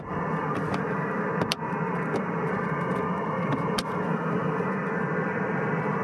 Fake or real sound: fake